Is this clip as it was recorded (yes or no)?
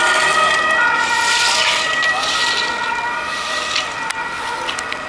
yes